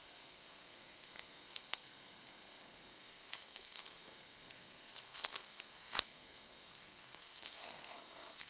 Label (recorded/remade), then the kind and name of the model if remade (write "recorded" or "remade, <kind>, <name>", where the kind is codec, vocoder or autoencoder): remade, codec, SNAC